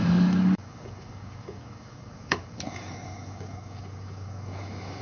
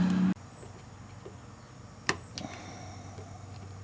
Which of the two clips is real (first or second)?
second